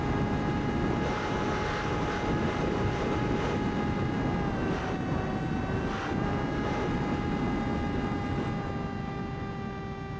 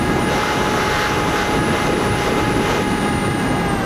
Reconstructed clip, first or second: second